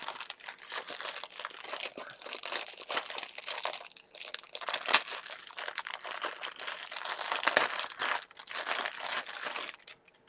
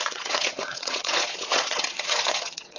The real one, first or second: first